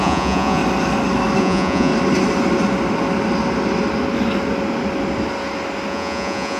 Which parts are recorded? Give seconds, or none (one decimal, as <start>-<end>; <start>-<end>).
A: 0.6-1.4; 1.9-5.9